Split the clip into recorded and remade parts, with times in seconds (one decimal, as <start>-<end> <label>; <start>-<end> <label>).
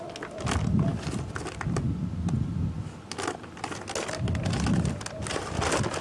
0.0-6.0 recorded